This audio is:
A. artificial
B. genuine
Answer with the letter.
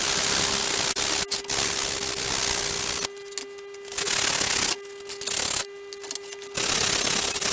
B